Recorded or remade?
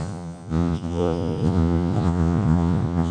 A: remade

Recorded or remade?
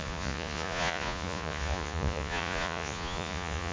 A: remade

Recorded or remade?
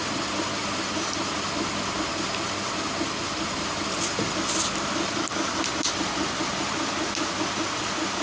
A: recorded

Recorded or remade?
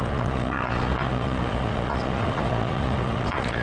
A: remade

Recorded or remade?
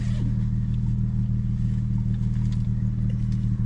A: recorded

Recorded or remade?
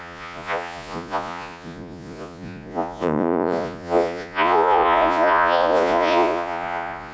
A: remade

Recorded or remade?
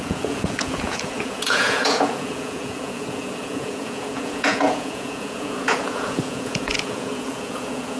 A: remade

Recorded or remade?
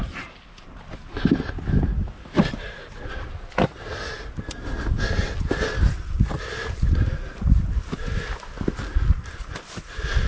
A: recorded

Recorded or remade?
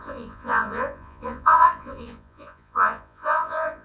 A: remade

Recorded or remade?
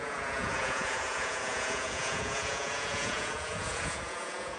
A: remade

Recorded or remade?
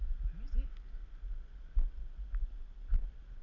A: recorded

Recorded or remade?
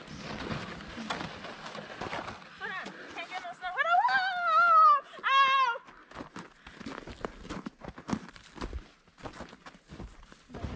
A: recorded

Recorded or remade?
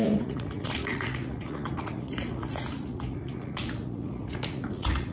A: remade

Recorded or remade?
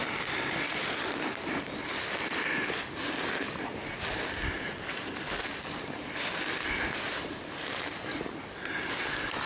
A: recorded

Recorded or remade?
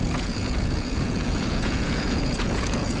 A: remade